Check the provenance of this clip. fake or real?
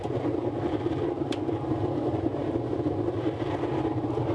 real